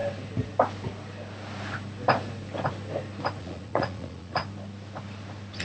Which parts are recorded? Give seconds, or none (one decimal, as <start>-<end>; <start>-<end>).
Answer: 0.0-3.4; 4.4-5.6